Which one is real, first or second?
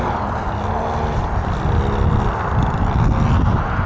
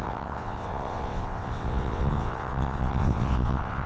first